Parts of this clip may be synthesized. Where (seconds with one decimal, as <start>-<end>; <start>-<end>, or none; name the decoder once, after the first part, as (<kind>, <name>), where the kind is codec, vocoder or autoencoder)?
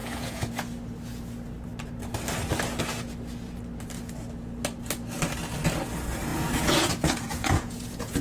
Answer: 0.0-0.5 (vocoder, Vocos); 6.3-8.2